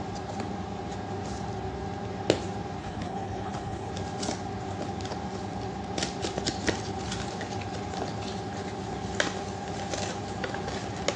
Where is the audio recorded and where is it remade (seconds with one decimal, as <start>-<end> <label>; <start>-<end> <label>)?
0.0-2.8 recorded; 2.8-3.9 remade; 3.9-11.2 recorded